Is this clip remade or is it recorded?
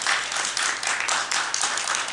recorded